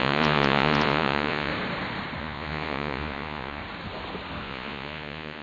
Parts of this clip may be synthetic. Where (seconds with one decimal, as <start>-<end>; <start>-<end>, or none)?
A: 0.0-1.5; 2.2-3.6; 4.4-5.4